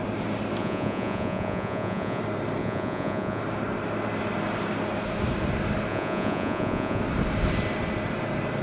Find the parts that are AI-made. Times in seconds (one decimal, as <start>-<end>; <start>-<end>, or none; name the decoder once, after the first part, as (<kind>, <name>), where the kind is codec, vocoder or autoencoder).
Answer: 0.6-2.2 (vocoder, Vocos); 2.6-3.4; 5.9-7.0